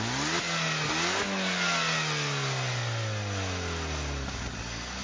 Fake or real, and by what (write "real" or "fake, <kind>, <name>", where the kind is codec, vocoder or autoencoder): real